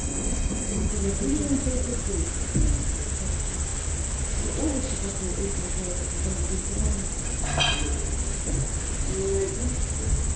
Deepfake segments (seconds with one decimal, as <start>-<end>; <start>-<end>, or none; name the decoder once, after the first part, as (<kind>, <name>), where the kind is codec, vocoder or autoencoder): 0.0-0.9 (codec, SNAC)